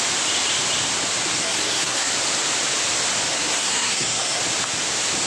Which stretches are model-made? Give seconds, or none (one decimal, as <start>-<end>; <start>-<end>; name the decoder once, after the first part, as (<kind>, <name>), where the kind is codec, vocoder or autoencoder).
1.4-2.1 (codec, SNAC); 3.3-4.4